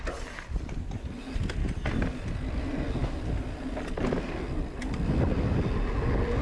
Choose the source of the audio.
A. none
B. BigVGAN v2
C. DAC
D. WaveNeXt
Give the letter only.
A